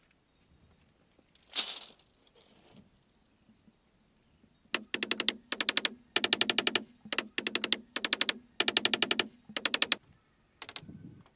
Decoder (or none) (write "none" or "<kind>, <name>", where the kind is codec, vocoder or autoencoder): none